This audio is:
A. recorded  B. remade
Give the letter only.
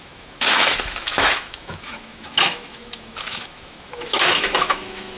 B